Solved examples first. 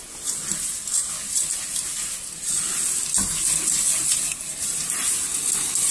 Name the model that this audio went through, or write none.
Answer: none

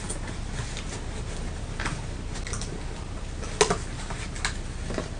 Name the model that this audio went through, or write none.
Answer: none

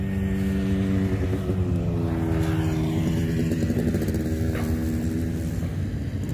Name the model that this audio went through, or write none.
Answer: none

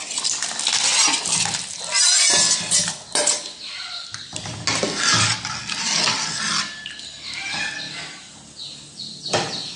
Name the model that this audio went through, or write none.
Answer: none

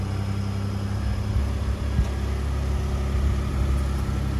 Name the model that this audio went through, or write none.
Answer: none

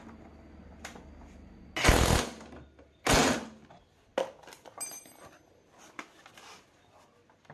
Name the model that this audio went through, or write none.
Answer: none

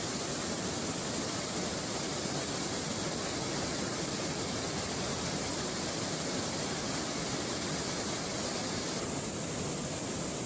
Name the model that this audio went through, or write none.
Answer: none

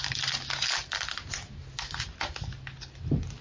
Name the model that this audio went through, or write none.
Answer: none